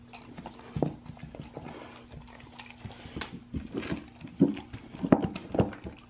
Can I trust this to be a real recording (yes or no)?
yes